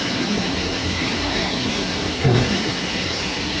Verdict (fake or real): fake